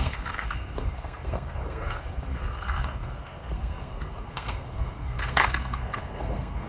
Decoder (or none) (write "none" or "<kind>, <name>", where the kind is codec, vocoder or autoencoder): codec, SNAC